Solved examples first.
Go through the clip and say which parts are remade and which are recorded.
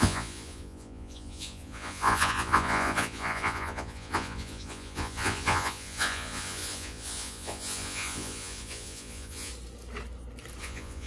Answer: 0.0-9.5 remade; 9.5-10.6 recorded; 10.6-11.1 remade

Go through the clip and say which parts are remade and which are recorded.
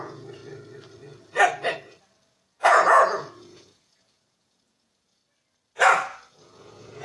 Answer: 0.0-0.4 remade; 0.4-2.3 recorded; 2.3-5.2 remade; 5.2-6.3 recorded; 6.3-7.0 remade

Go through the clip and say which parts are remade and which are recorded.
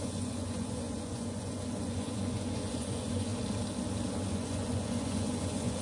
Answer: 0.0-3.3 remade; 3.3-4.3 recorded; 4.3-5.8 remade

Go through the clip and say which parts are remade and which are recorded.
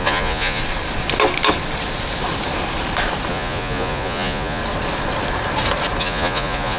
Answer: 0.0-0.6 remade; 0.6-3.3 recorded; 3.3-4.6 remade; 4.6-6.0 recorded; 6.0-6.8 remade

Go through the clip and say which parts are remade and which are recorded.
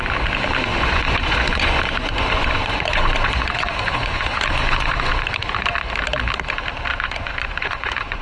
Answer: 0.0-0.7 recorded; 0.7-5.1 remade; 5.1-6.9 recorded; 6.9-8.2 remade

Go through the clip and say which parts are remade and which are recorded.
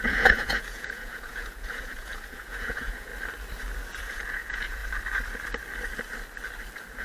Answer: 0.0-3.1 remade; 3.1-4.0 recorded; 4.0-4.8 remade; 4.8-7.0 recorded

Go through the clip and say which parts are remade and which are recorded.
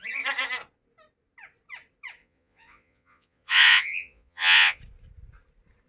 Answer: 0.0-2.2 recorded; 2.2-4.8 remade; 4.8-5.9 recorded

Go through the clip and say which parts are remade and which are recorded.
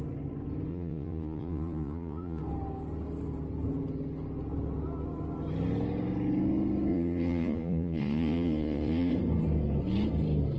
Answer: 0.0-0.7 recorded; 0.7-2.4 remade; 2.4-6.9 recorded; 6.9-9.1 remade; 9.1-10.6 recorded